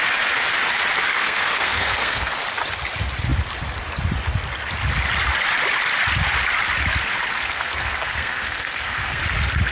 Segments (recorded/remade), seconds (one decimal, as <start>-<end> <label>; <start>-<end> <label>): 0.0-1.1 recorded; 1.1-2.3 remade; 2.3-7.3 recorded; 7.3-9.2 remade; 9.2-9.7 recorded